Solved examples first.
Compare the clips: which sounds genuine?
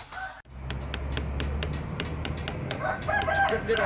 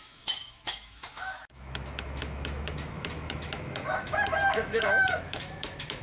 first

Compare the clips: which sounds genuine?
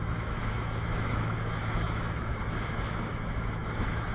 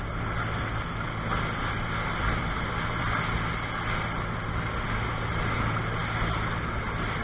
second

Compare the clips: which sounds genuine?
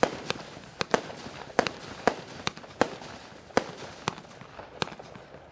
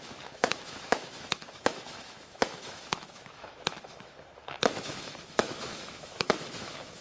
first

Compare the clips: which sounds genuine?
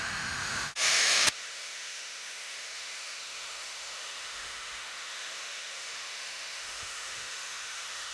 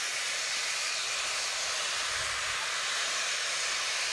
second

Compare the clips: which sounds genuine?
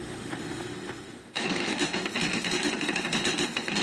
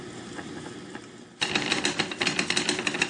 second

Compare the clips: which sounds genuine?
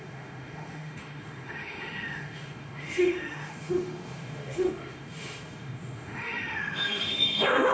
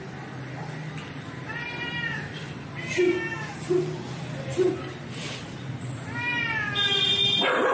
second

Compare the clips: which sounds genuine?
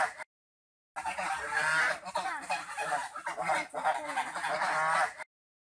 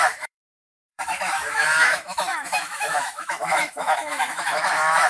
first